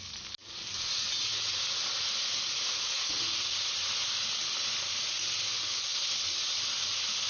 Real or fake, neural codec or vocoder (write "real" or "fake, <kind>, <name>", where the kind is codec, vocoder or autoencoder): real